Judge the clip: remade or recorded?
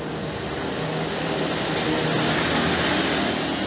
recorded